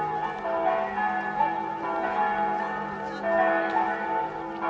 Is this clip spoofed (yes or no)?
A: no